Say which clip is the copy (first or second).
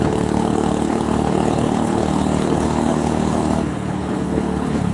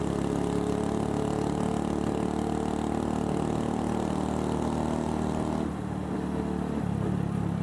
first